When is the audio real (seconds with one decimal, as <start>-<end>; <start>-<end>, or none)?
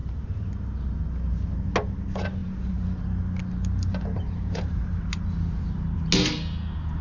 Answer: 0.5-2.4; 3.0-3.7; 4.9-7.0